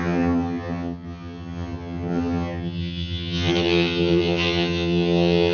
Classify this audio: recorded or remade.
remade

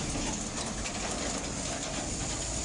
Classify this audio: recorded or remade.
recorded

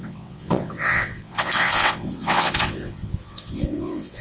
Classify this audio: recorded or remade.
remade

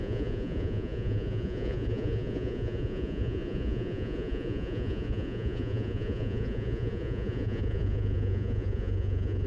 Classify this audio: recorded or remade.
remade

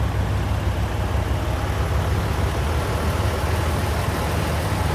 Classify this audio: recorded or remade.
recorded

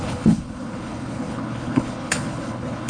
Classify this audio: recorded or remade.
remade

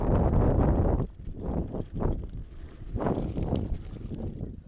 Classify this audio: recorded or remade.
recorded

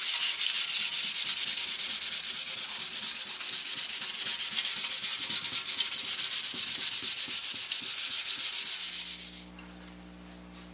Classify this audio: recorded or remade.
recorded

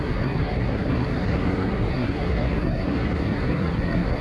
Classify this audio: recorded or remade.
remade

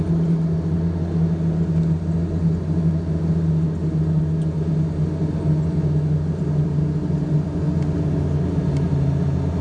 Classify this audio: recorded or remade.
recorded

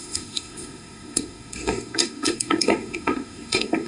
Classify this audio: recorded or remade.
remade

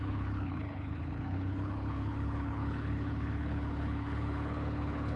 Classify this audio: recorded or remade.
remade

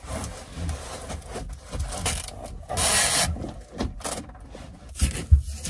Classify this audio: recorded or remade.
recorded